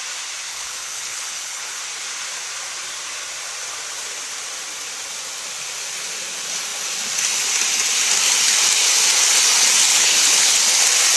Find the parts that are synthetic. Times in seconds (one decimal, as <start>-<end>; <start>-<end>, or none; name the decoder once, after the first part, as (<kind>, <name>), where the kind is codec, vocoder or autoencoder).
0.5-1.8 (codec, HILCodec); 9.9-10.6